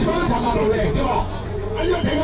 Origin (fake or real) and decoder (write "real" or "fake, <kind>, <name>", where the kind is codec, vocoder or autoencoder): fake, vocoder, Vocos